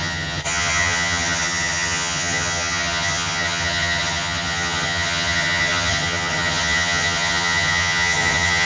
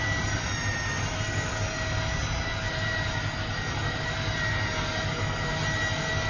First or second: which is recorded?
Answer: second